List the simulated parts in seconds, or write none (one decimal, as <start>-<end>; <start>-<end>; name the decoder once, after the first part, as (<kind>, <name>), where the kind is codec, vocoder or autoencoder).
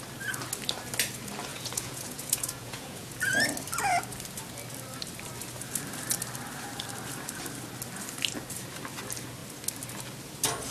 1.5-3.2 (vocoder, Vocos)